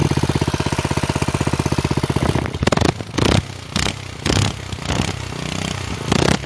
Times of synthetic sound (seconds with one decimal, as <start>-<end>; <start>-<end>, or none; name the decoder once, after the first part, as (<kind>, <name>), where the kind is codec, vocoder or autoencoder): none